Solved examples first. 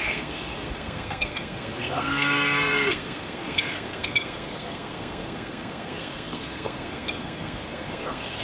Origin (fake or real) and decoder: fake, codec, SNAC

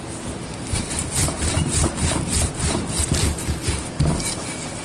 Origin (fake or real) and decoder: real